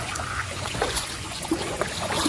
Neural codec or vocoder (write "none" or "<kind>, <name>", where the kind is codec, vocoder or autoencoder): vocoder, Vocos